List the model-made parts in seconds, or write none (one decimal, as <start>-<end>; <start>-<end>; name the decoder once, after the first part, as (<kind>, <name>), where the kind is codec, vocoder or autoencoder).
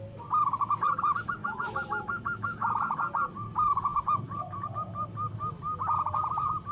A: 1.4-3.1 (autoencoder, DAC-VAE)